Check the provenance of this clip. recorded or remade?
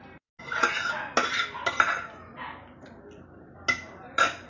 recorded